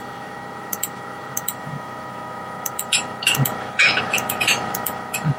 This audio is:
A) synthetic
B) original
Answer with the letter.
A